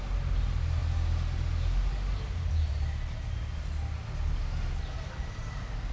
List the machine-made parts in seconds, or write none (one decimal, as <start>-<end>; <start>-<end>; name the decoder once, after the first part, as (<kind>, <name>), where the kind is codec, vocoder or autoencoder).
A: none

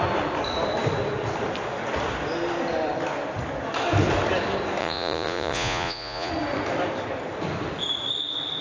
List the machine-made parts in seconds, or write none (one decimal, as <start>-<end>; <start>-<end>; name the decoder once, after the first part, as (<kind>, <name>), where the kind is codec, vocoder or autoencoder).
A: 4.8-6.3 (vocoder, Vocos)

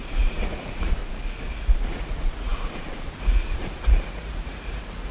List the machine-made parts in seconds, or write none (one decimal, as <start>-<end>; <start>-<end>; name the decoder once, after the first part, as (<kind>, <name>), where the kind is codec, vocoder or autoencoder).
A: 0.0-1.0 (vocoder, Vocos); 1.9-5.1

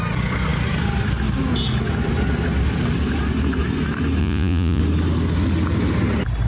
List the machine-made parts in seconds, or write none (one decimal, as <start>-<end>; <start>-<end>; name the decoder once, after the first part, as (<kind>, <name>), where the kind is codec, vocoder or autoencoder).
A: 4.2-4.8 (vocoder, Vocos)

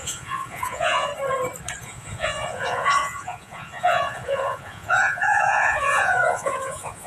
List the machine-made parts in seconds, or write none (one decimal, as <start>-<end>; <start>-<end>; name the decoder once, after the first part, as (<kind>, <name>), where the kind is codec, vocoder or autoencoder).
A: 0.0-1.1 (vocoder, Vocos); 1.8-7.1

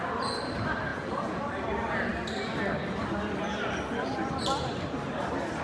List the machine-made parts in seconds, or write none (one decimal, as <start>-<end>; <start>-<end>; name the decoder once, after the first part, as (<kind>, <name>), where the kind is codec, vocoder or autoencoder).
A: 0.9-1.4 (vocoder, Vocos)

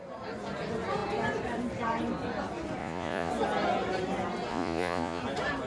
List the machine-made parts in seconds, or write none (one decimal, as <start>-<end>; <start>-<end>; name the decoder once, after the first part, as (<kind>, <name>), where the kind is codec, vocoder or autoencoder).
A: 2.8-3.3 (vocoder, Vocos); 4.5-5.2

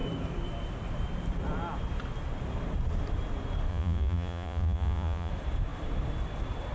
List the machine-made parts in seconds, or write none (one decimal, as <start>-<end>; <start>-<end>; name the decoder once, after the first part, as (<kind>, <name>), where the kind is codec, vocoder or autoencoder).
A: 3.7-5.3 (vocoder, Vocos)